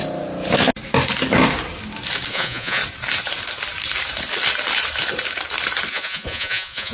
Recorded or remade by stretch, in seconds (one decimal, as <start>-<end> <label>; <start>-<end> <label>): 0.0-2.3 recorded; 2.3-2.8 remade; 2.8-5.9 recorded; 5.9-6.9 remade

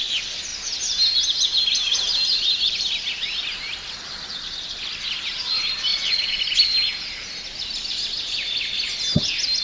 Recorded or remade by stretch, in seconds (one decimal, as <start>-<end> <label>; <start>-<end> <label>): 0.0-5.9 recorded; 5.9-6.4 remade; 6.4-9.6 recorded